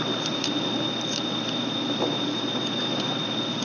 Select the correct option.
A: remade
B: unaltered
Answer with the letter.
B